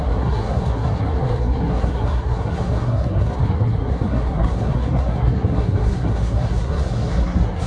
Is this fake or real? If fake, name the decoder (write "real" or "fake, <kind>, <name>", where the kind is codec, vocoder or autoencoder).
fake, codec, SNAC